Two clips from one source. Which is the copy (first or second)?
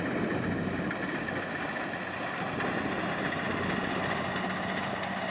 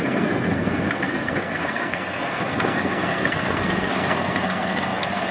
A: second